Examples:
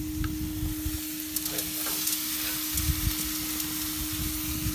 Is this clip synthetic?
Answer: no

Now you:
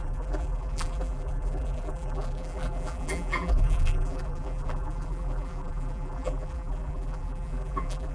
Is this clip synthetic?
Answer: yes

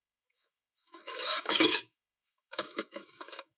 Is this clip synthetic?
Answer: yes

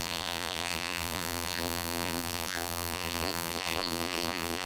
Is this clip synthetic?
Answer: yes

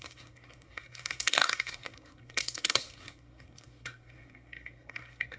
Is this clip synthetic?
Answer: yes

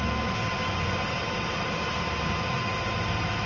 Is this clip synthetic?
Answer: no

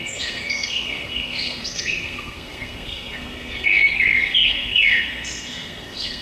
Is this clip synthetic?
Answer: yes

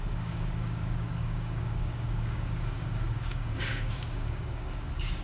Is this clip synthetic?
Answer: yes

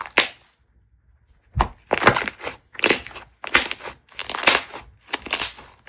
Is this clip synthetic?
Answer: no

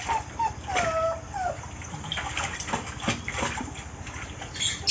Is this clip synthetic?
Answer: no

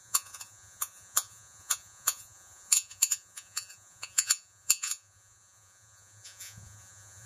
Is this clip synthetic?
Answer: yes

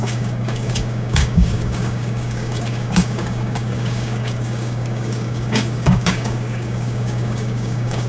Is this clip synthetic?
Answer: yes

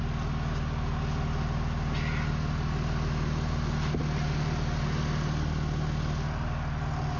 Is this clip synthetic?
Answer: no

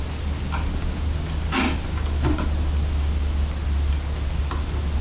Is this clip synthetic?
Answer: no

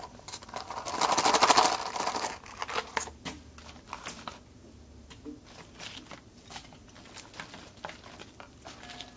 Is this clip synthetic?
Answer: no